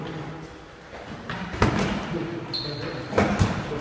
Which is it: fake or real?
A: real